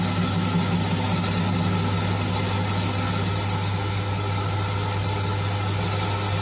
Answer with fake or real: real